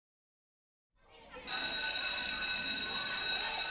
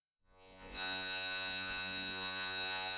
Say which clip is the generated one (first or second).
second